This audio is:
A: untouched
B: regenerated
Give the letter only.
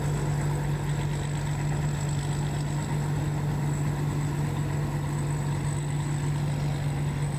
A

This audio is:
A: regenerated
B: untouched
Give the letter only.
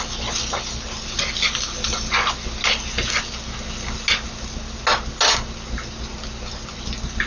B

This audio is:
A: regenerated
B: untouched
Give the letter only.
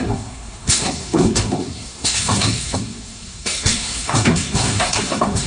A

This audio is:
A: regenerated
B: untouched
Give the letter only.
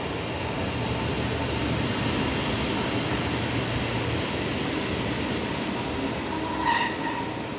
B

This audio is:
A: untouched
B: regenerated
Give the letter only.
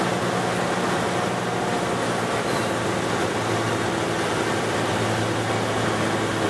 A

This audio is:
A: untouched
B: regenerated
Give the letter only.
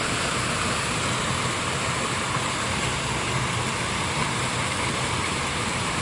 A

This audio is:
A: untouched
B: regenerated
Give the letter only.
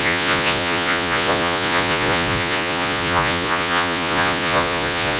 B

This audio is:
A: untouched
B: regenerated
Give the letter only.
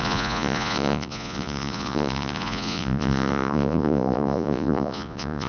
B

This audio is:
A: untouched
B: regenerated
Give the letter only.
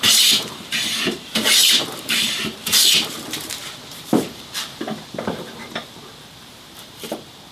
B